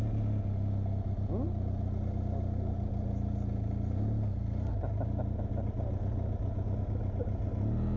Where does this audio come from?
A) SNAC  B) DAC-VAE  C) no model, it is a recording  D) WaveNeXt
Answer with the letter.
C